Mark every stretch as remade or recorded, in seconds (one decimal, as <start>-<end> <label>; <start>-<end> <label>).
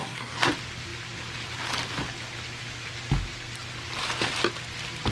0.0-0.5 remade; 0.5-5.1 recorded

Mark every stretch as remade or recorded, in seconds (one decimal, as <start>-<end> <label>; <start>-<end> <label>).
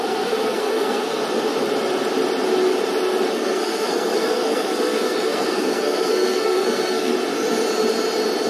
0.0-1.2 remade; 1.2-3.3 recorded; 3.3-7.1 remade; 7.1-8.5 recorded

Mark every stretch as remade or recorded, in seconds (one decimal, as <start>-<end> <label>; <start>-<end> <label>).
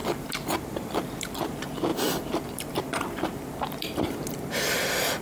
0.0-1.5 remade; 1.5-1.9 recorded; 1.9-5.2 remade